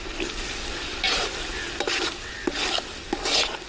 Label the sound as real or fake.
real